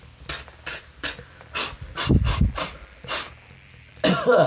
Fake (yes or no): no